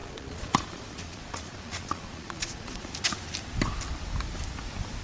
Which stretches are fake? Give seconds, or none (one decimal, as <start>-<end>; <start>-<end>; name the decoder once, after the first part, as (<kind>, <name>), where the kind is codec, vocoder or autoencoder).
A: 0.0-2.9 (vocoder, Vocos)